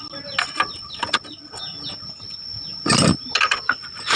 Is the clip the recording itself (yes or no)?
yes